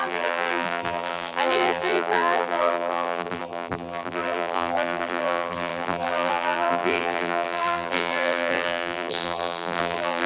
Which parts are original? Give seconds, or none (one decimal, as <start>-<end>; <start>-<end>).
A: none